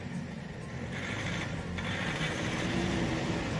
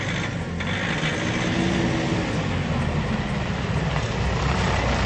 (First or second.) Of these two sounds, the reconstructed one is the first